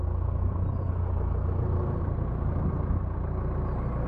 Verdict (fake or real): real